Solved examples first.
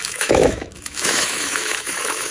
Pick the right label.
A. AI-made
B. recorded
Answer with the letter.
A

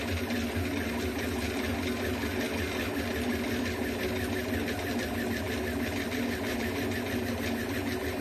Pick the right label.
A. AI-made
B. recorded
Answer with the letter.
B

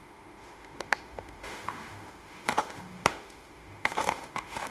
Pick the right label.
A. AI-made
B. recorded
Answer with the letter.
A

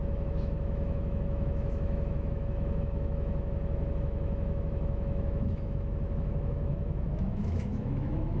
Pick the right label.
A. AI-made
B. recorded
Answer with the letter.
A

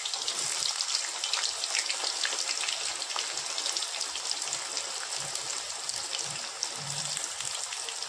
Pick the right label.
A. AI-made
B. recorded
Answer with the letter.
B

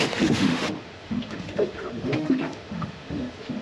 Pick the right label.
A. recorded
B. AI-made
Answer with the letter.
B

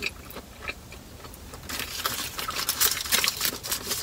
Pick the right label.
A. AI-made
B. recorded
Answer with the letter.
B